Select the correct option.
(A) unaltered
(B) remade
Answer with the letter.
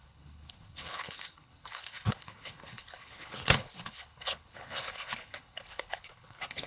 B